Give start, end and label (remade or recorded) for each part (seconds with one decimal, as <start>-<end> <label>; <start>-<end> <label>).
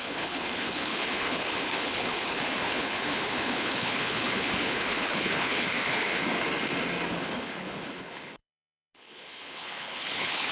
0.0-6.2 remade; 6.2-7.1 recorded; 7.1-10.5 remade